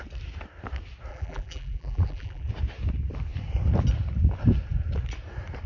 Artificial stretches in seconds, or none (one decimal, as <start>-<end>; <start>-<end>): 1.1-2.5